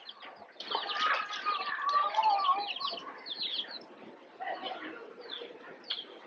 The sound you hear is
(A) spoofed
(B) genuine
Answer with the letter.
A